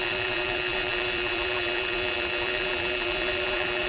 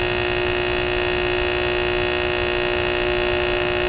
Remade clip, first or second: first